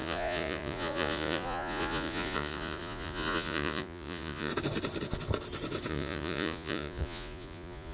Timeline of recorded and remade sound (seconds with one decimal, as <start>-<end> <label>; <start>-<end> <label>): 0.0-4.5 remade; 4.5-5.9 recorded; 5.9-7.9 remade